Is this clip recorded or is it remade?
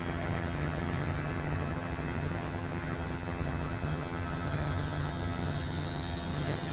remade